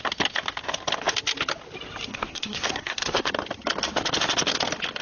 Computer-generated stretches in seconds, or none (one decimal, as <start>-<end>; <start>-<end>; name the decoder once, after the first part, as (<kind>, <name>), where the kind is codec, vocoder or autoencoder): 2.1-3.3 (codec, SNAC)